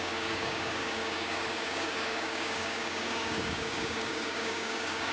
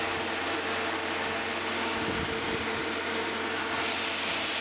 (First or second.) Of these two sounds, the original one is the second